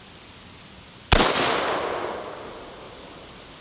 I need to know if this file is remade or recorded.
recorded